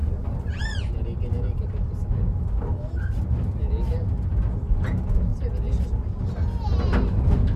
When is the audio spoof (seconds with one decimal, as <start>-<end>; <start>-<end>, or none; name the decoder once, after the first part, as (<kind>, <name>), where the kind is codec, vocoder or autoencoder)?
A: none